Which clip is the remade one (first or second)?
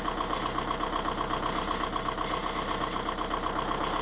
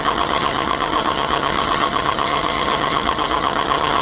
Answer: second